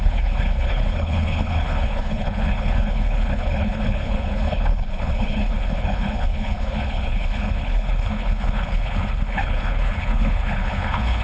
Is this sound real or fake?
fake